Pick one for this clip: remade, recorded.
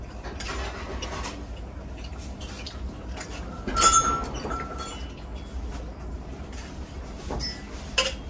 recorded